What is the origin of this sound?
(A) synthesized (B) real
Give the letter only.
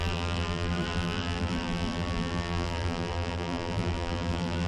A